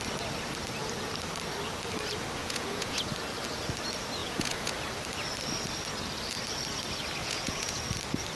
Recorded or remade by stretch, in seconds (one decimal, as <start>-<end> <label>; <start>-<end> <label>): 0.0-2.4 recorded; 2.4-3.1 remade; 3.1-4.2 recorded; 4.2-4.7 remade; 4.7-7.2 recorded; 7.2-7.8 remade; 7.8-8.4 recorded